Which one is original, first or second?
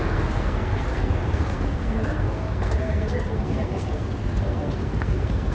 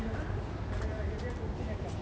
second